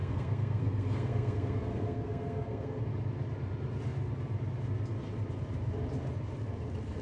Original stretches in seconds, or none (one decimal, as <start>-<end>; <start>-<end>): 2.8-7.0